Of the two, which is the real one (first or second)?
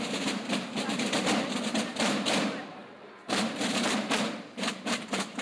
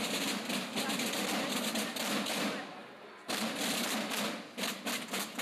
second